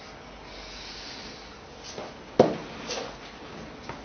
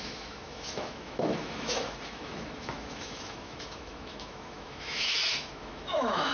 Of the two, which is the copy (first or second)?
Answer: second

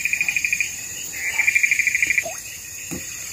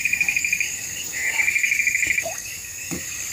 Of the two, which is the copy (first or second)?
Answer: second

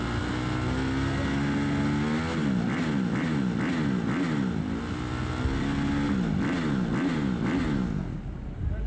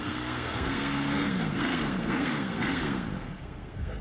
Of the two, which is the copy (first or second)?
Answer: second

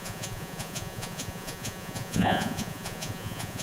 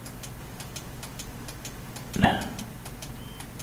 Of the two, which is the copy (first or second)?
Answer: first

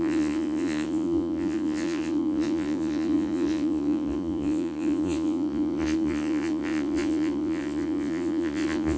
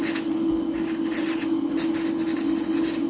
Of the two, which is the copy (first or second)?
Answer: first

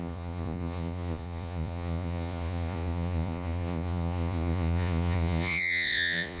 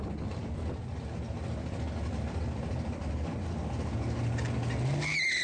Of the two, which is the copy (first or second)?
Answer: first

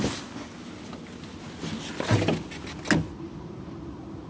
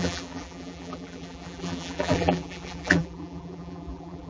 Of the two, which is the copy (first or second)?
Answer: second